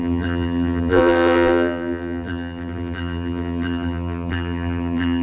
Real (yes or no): no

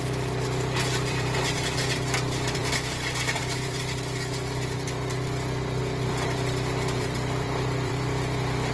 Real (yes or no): no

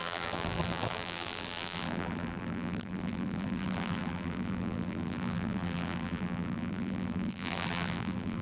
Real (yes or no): no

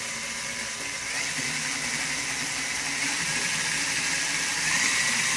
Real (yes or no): yes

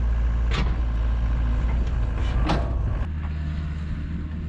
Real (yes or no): yes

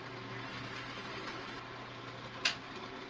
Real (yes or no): yes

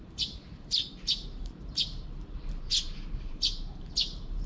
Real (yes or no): no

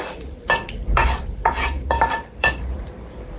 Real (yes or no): no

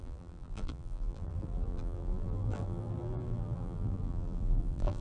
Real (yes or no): no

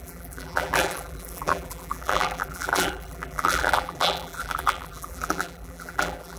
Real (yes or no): no